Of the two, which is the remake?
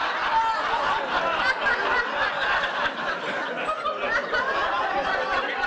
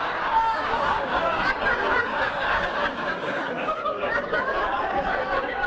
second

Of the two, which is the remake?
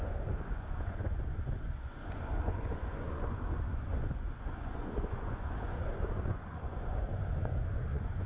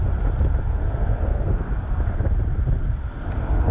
first